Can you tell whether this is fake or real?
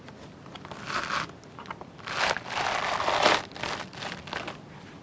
real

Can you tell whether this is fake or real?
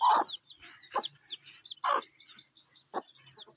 real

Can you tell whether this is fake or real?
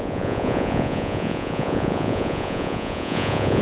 fake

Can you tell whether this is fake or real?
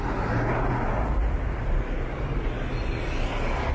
real